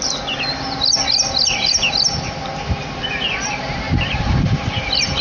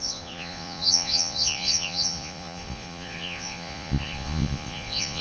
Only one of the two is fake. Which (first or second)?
second